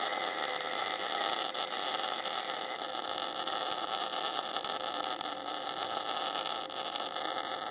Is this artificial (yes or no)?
no